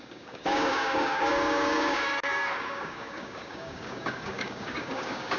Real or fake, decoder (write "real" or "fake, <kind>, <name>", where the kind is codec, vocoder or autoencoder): fake, codec, DAC